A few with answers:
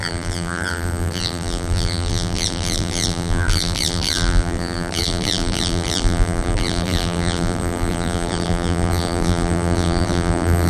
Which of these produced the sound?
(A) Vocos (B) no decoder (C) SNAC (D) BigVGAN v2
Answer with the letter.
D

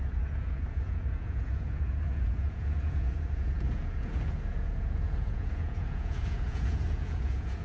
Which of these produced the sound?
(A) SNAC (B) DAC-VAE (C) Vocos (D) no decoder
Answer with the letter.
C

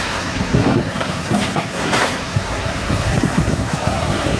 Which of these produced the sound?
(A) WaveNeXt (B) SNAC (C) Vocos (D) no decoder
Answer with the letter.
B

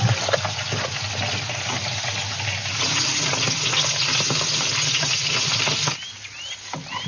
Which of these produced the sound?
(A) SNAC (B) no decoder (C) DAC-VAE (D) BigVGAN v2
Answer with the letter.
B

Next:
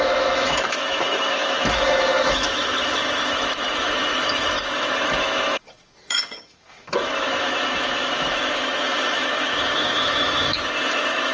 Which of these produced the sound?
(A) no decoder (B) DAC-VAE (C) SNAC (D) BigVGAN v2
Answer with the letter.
B